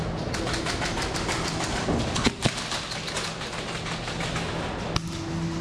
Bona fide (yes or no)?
yes